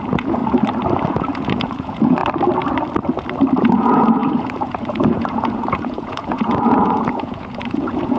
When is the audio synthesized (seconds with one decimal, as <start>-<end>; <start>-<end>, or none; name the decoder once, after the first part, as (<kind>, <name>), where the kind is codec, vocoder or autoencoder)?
0.0-0.4 (vocoder, Vocos); 1.1-2.2; 3.6-8.2